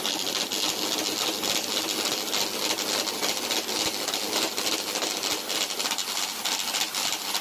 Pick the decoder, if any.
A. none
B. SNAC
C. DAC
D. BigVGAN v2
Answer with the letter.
A